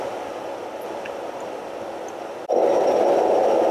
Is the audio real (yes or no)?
yes